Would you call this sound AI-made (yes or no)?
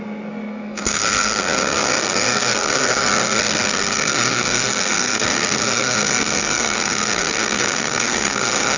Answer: yes